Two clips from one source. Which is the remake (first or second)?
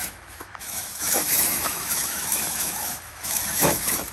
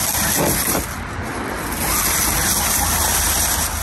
first